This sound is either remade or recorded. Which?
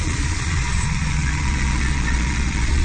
remade